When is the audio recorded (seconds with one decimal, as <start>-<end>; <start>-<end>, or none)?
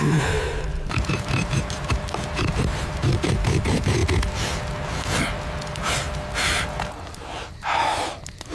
4.0-7.0